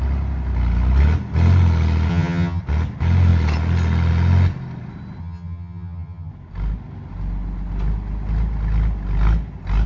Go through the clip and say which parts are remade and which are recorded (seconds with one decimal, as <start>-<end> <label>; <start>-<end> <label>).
0.0-2.1 recorded; 2.1-2.6 remade; 2.6-5.2 recorded; 5.2-6.3 remade; 6.3-9.9 recorded